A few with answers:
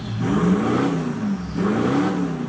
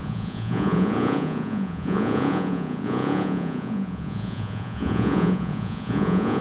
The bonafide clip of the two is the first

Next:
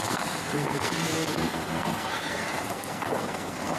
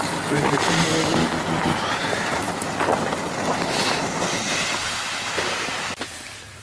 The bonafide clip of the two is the second